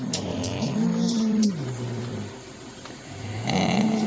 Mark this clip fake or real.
fake